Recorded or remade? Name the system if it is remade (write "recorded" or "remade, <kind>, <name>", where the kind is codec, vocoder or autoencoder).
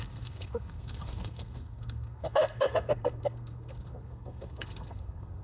remade, codec, SNAC